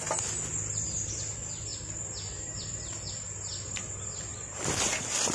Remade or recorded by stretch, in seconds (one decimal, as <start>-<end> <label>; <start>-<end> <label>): 0.0-5.3 recorded